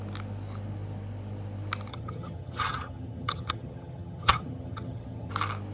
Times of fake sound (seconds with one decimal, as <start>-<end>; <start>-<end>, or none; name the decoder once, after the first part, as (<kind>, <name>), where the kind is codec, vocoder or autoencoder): 1.9-5.3 (vocoder, HiFi-GAN)